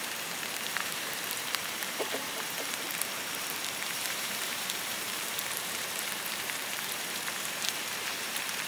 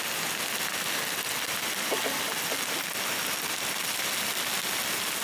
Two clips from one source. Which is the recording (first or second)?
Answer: second